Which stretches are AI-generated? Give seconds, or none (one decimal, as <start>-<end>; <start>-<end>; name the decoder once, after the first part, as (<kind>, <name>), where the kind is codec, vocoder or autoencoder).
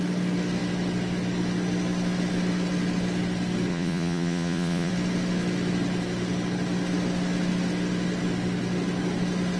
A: 3.7-4.9 (vocoder, Vocos)